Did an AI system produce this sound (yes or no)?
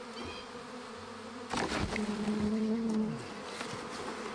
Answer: no